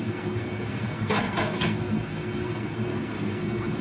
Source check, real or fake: fake